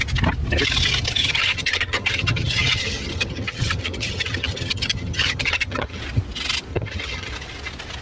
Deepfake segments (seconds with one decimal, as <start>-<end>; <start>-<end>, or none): 1.2-6.0; 6.7-7.3